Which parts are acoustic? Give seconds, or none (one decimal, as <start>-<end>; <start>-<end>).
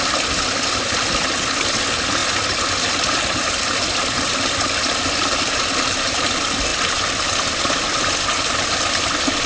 0.0-9.5